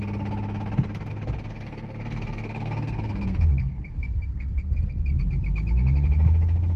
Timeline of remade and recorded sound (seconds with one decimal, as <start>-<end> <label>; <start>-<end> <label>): 0.0-1.1 recorded; 1.1-5.2 remade; 5.2-6.8 recorded